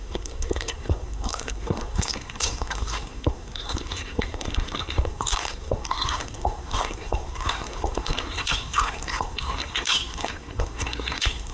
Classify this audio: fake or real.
fake